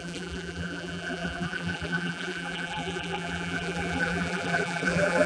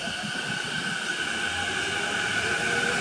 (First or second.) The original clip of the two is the second